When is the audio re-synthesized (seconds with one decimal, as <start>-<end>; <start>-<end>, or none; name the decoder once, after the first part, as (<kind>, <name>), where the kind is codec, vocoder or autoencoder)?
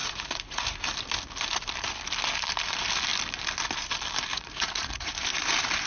0.0-0.6 (vocoder, Vocos); 4.3-5.1